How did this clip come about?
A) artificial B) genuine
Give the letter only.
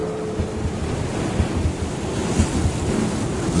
B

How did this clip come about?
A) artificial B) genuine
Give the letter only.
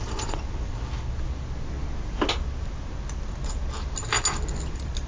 B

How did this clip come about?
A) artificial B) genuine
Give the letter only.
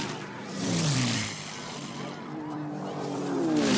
A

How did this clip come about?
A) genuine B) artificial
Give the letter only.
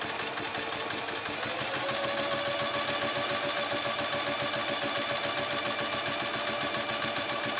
A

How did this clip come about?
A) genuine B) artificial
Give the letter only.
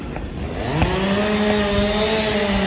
A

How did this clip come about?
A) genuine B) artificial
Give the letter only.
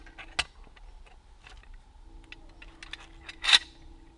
A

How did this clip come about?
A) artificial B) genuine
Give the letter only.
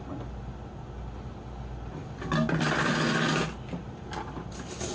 B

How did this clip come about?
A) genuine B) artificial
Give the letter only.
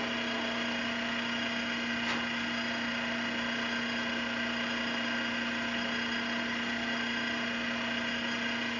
A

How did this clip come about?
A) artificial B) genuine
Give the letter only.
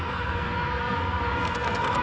A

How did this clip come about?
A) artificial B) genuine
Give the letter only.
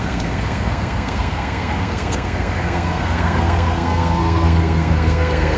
A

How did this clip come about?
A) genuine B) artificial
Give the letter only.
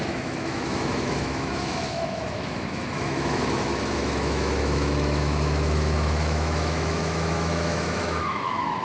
B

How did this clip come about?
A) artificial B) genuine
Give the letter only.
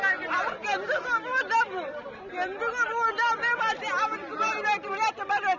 B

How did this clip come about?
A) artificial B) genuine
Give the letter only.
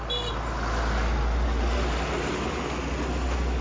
B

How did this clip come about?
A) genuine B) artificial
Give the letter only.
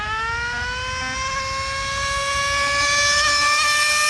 A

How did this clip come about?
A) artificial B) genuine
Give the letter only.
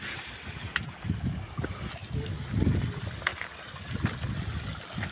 B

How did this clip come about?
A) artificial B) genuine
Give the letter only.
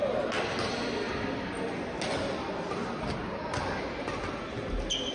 B